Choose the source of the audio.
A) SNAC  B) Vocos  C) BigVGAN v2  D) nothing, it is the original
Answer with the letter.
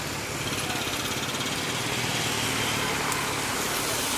D